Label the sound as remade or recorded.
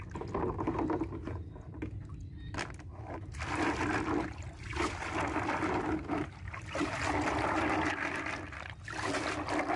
recorded